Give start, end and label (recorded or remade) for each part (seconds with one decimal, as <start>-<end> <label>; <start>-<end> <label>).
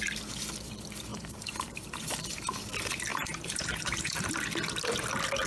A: 0.0-1.1 recorded; 1.1-2.0 remade; 2.0-3.1 recorded; 3.1-4.3 remade; 4.3-5.5 recorded